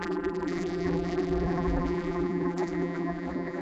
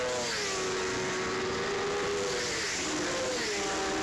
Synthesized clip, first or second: first